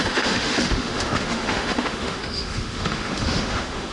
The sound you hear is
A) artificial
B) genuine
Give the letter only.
A